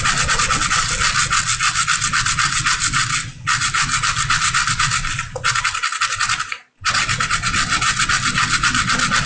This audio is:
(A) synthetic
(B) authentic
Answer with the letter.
B